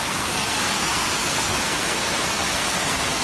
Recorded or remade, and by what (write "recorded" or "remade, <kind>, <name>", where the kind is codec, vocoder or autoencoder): remade, codec, SNAC